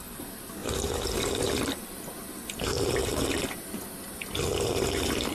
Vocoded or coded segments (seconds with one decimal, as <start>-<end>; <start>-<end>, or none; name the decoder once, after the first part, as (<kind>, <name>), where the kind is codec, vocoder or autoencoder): none